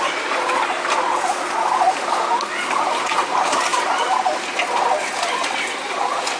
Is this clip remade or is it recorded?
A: recorded